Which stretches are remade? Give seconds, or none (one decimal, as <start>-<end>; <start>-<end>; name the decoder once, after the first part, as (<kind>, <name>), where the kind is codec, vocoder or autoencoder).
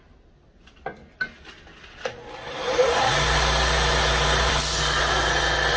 none